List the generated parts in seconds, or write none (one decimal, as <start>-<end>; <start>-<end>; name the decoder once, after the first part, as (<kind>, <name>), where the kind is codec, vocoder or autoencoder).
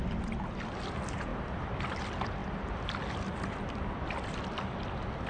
none